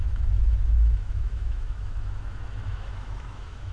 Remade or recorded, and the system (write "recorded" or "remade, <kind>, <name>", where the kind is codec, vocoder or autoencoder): remade, autoencoder, DAC-VAE